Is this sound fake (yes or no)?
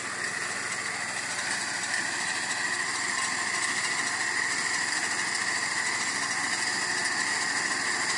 no